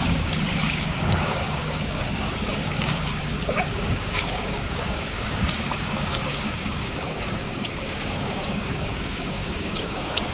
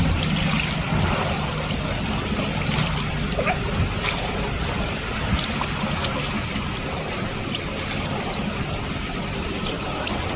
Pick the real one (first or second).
second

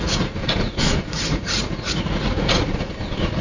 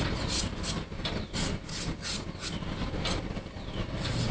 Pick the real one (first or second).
second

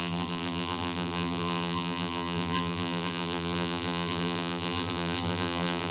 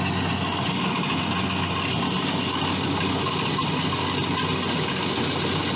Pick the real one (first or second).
second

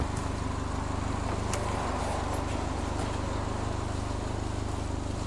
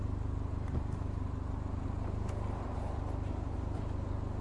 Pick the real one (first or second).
first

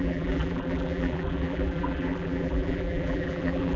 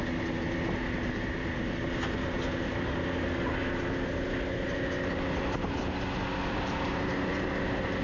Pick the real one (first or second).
second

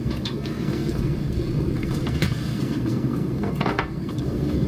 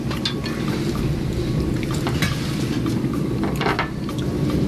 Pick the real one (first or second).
second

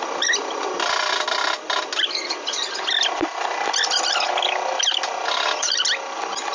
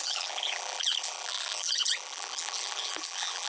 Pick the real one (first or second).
first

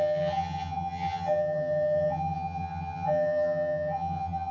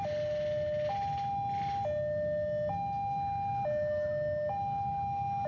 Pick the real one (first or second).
second